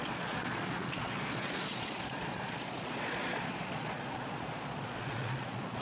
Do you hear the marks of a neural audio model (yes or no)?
yes